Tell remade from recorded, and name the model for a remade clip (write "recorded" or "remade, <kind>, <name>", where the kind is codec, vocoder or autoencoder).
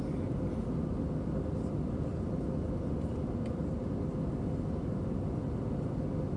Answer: recorded